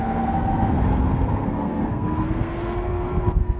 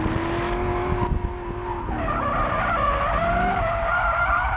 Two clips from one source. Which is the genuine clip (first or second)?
second